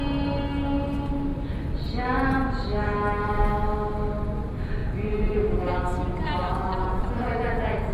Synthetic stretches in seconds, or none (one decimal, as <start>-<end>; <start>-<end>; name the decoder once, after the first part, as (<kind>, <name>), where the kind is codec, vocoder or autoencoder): 4.8-7.0 (vocoder, BigVGAN v2)